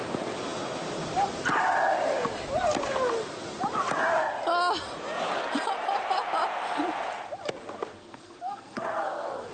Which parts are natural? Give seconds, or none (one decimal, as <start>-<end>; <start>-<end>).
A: 0.0-7.9

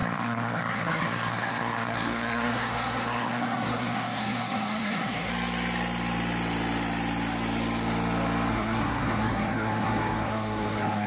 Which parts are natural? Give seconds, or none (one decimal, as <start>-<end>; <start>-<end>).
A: 5.3-8.5

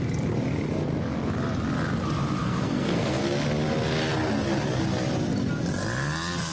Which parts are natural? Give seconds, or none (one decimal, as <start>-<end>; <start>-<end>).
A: 0.0-2.4; 3.2-6.5

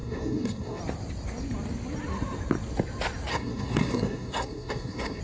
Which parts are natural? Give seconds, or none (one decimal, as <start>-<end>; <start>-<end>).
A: 0.8-3.3

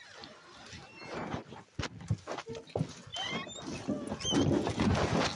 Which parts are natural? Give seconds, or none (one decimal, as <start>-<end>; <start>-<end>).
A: 0.0-5.4

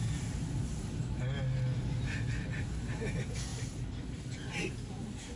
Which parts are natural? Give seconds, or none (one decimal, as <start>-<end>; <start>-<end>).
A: 0.0-5.4

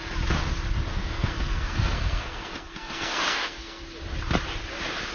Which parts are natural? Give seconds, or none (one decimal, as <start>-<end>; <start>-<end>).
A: 0.0-0.9; 3.8-5.1

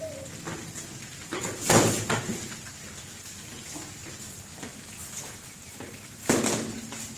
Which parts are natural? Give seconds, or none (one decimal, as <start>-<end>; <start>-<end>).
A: 0.0-7.2